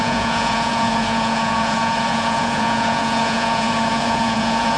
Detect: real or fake fake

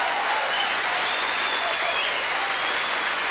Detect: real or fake fake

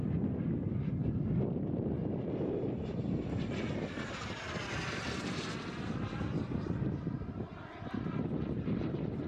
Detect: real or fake real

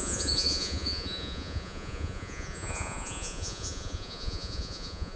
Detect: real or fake fake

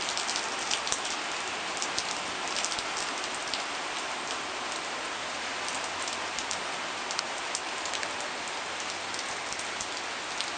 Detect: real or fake real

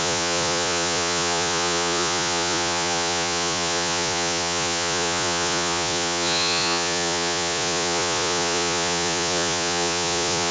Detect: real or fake fake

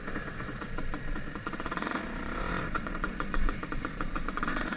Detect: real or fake fake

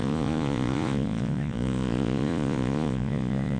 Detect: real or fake fake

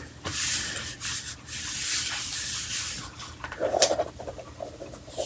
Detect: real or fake real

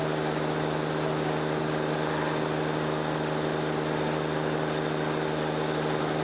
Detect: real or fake real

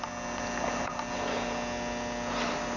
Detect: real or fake real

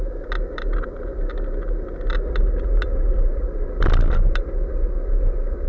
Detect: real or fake real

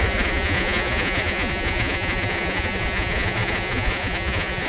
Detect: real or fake fake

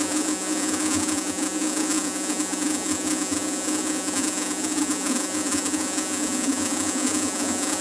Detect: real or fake fake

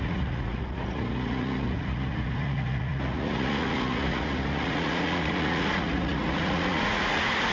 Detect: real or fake fake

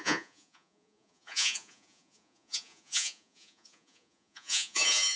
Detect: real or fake fake